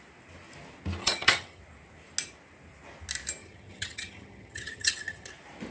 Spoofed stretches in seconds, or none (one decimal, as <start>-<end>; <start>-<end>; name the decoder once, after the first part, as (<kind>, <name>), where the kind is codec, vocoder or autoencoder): 1.0-1.6 (vocoder, HiFi-GAN); 3.4-5.3